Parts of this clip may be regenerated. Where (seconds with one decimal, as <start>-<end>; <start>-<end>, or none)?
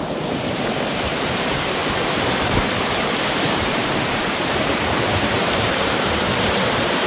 0.0-3.8; 4.3-7.1